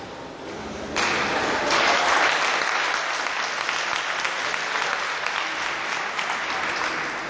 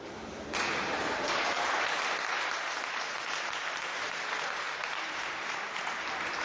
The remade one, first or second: second